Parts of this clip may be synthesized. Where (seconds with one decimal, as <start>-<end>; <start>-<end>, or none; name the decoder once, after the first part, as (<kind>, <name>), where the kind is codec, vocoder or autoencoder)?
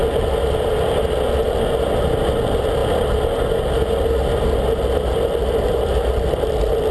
none